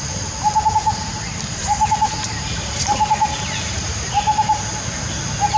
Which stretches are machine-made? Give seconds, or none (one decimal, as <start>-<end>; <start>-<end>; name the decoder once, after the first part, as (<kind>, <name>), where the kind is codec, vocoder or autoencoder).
1.0-1.6 (vocoder, BigVGAN v2); 3.2-4.6